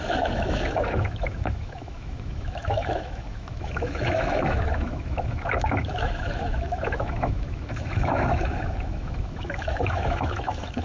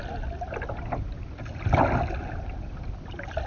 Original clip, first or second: second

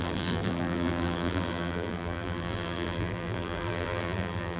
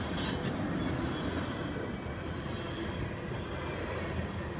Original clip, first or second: second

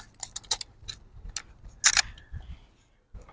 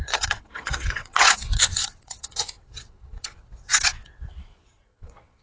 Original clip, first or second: first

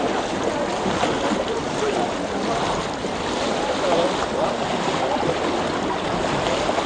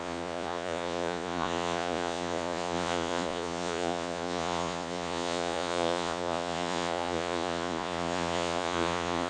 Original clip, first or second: first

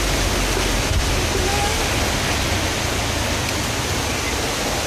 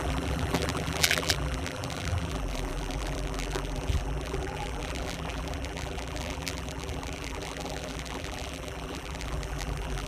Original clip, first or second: first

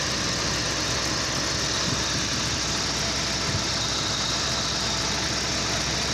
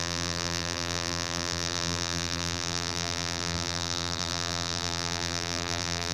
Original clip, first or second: first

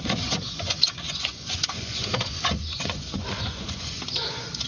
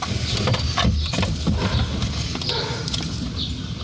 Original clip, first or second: second